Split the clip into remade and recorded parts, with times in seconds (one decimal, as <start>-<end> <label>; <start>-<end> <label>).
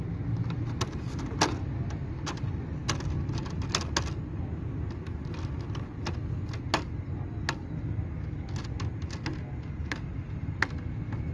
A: 0.0-11.3 recorded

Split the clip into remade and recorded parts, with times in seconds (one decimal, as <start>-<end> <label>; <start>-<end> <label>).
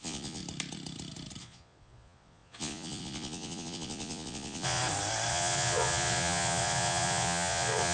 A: 0.0-0.4 remade; 0.4-1.4 recorded; 1.4-4.8 remade; 4.8-5.3 recorded; 5.3-7.9 remade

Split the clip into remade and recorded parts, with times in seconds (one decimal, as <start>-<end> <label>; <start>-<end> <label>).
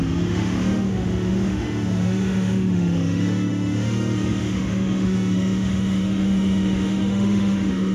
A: 0.0-7.9 remade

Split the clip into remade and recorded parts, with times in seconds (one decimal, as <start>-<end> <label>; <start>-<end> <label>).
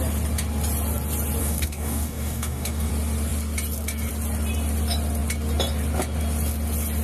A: 0.0-1.4 recorded; 1.4-2.9 remade; 2.9-7.0 recorded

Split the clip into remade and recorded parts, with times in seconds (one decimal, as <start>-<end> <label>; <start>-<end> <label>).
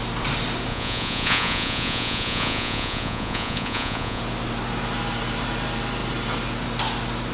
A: 0.0-0.7 recorded; 0.7-4.2 remade; 4.2-7.3 recorded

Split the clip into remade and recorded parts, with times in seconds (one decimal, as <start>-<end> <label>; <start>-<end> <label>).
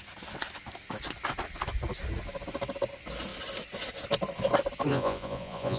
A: 0.0-4.9 recorded; 4.9-5.8 remade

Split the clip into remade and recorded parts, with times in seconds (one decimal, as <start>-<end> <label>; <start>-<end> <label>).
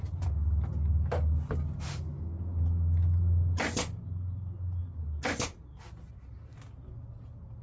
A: 0.0-7.6 recorded